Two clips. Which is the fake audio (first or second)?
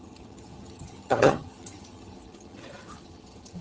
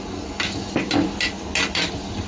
first